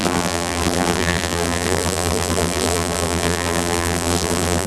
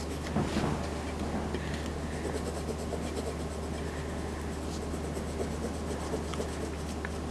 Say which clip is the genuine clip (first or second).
second